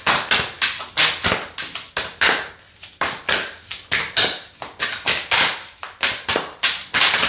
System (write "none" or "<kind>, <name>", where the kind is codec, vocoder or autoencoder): none